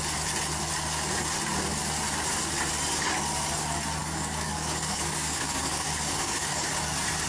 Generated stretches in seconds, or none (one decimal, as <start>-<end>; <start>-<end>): 4.0-6.7